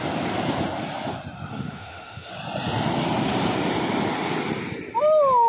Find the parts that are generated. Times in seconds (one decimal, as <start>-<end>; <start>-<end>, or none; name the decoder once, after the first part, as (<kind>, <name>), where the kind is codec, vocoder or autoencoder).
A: 1.5-2.3 (autoencoder, DAC-VAE)